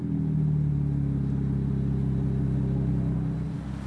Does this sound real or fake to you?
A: real